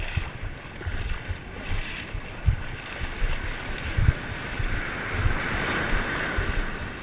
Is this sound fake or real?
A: real